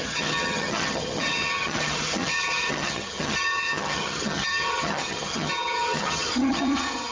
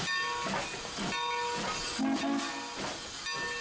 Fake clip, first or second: first